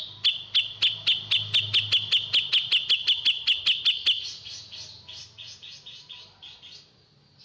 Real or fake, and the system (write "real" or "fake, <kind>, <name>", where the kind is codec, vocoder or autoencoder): real